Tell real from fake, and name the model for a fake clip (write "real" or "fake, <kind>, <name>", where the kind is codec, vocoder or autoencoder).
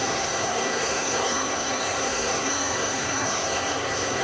fake, codec, SNAC